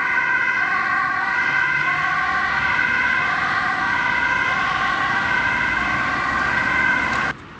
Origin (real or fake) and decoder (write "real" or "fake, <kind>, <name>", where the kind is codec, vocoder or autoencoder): real